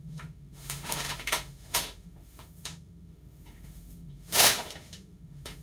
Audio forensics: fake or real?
fake